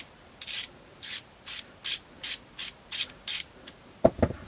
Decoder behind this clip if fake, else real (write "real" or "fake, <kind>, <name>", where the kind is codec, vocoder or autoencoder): real